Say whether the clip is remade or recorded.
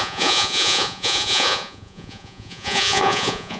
remade